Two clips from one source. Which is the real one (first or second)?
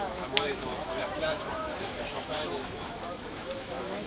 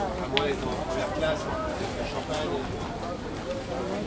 second